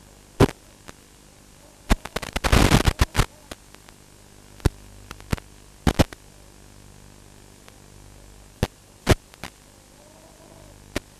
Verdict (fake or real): real